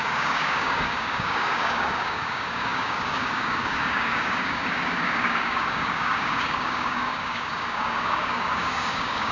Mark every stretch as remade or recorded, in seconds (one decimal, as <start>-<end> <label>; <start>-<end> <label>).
0.0-9.3 remade